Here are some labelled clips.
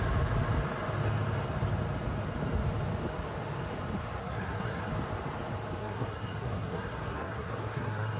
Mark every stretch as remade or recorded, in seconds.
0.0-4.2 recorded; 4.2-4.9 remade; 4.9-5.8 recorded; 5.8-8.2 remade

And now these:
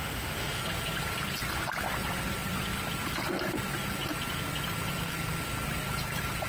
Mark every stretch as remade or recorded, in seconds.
0.0-0.6 remade; 0.6-6.5 recorded

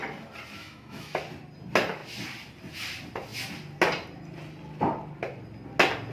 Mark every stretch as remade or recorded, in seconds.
0.0-0.6 recorded; 0.6-1.2 remade; 1.2-6.1 recorded

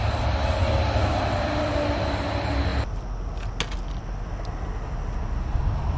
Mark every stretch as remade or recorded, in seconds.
0.0-1.1 recorded; 1.1-1.7 remade; 1.7-6.0 recorded

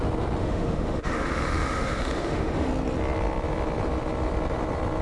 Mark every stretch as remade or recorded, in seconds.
0.0-0.4 recorded; 0.4-2.7 remade; 2.7-5.0 recorded